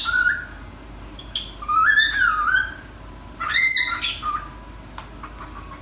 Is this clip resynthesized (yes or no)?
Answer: no